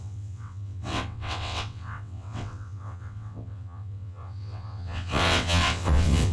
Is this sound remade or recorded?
remade